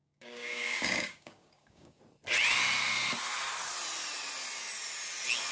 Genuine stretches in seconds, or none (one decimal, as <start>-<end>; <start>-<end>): 2.0-5.5